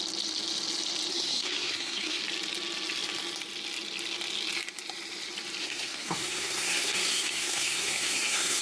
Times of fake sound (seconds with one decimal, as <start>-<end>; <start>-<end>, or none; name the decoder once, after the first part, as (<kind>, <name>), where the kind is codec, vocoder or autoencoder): 1.1-2.2 (codec, SNAC); 5.6-8.6